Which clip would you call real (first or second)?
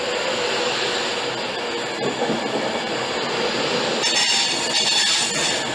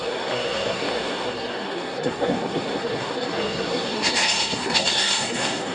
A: first